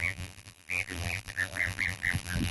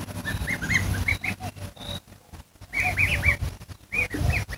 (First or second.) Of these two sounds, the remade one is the first